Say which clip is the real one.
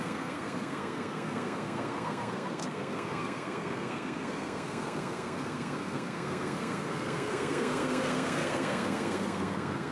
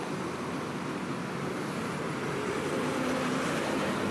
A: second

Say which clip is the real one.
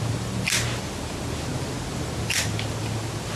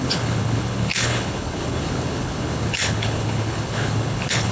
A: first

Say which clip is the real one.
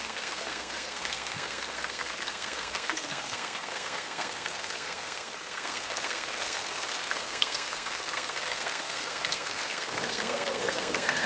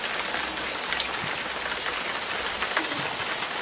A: second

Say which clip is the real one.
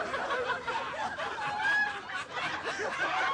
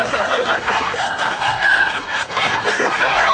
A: first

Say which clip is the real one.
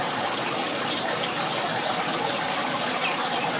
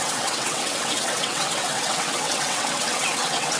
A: first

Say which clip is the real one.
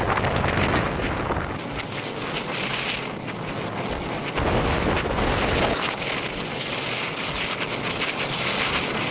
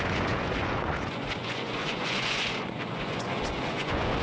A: first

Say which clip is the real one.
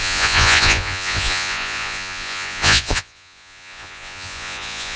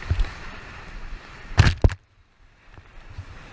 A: second